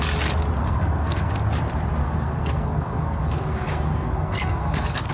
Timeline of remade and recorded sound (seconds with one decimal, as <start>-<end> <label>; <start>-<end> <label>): 0.0-0.6 recorded; 0.6-1.3 remade; 1.3-2.0 recorded; 2.0-5.1 remade